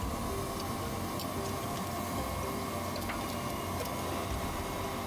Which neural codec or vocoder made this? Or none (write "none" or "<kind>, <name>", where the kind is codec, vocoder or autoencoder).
none